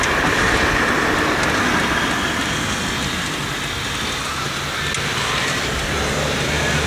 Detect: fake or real real